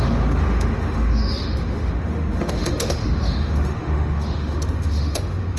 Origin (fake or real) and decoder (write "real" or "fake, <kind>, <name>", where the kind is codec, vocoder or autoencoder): fake, autoencoder, DAC-VAE